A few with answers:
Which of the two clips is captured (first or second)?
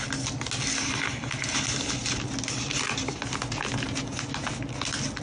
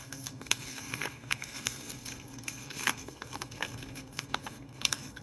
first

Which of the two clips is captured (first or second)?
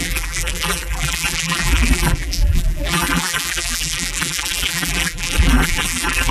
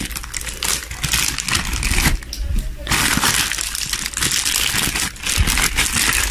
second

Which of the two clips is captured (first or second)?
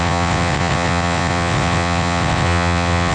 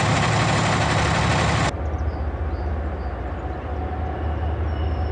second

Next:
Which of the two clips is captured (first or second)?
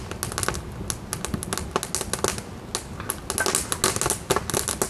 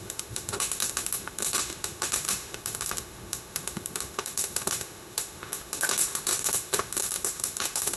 first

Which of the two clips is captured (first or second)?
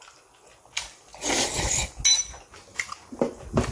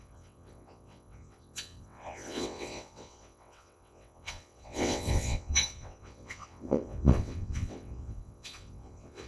first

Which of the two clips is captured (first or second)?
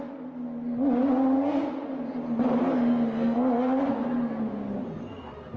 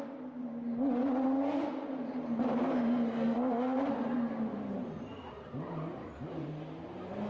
first